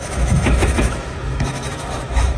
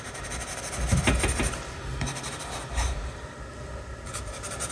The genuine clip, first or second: second